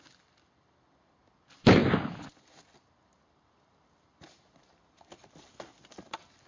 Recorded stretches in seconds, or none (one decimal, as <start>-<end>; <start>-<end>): 0.0-6.5